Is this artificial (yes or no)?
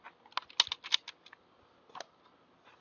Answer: no